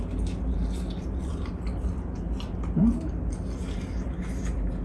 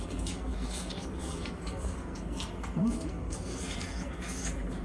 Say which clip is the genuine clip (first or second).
first